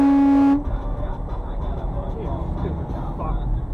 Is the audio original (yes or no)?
yes